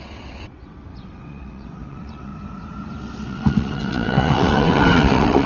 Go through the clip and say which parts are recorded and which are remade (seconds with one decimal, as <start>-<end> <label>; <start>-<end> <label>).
0.0-2.3 remade; 2.3-3.0 recorded; 3.0-5.5 remade

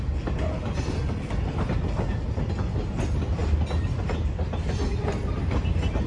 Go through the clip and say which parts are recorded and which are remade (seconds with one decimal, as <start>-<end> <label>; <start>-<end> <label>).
0.0-6.1 recorded

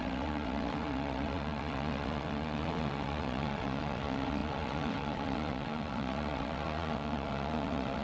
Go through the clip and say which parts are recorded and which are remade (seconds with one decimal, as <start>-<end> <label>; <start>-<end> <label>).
0.0-8.0 remade